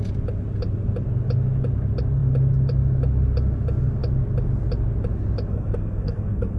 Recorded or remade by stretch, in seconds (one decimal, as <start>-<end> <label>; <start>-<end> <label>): 0.0-5.5 recorded; 5.5-6.6 remade